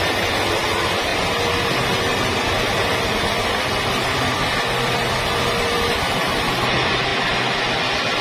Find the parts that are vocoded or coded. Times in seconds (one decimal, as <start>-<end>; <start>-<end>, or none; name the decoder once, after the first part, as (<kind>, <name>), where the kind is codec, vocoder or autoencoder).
none